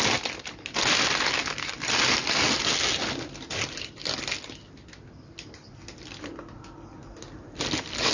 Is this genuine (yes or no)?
yes